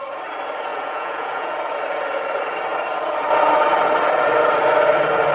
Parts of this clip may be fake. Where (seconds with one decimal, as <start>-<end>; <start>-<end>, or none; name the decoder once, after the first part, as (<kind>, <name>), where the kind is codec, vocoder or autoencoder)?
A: 0.7-1.5 (vocoder, Vocos)